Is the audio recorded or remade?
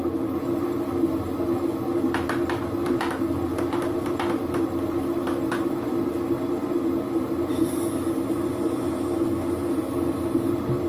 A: recorded